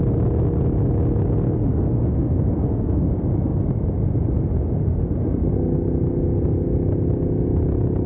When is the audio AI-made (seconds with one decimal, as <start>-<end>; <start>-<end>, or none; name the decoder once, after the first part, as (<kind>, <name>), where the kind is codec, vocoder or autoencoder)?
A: 1.7-3.1 (codec, SNAC)